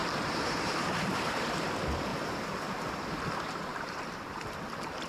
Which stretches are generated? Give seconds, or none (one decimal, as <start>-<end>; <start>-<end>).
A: 0.0-1.7; 2.1-3.3; 3.7-4.4